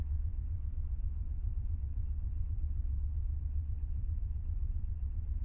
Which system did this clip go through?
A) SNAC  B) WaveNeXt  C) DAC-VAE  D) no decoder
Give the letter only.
B